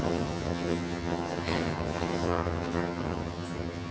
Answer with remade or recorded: remade